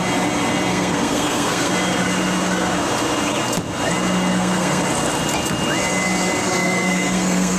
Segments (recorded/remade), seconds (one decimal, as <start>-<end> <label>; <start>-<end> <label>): 0.0-0.7 recorded; 0.7-1.7 remade; 1.7-4.3 recorded; 4.3-4.8 remade; 4.8-6.4 recorded; 6.4-7.6 remade